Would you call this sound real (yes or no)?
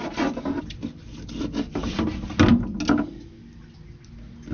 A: yes